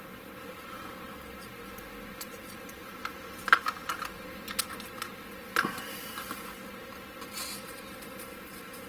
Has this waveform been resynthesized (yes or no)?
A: no